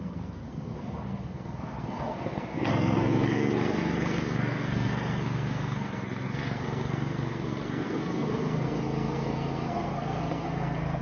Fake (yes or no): yes